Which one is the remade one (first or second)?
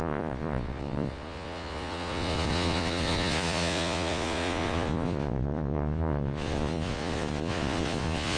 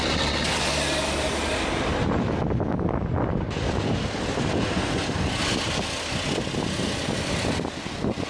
first